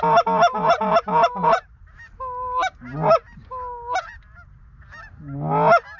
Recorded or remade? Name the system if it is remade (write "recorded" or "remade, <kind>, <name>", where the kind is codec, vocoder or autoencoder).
recorded